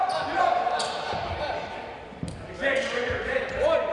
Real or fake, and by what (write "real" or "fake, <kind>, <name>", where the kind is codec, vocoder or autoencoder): real